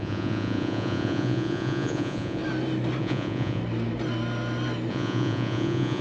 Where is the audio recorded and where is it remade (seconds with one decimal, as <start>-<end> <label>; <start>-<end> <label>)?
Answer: 0.0-2.4 remade; 2.4-3.0 recorded; 3.0-3.6 remade; 3.6-4.9 recorded; 4.9-6.0 remade